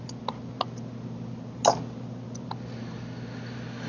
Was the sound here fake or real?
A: real